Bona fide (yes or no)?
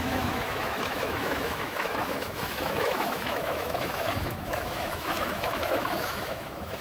no